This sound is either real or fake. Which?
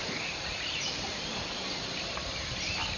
fake